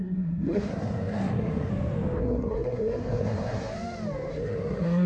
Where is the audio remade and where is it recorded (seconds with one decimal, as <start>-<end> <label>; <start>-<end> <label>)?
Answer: 0.0-1.7 remade; 1.7-2.2 recorded; 2.2-3.7 remade; 3.7-4.3 recorded; 4.3-5.1 remade

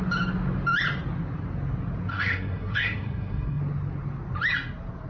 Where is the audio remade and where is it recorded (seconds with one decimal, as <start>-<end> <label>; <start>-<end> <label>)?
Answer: 0.0-2.1 recorded; 2.1-3.6 remade; 3.6-5.1 recorded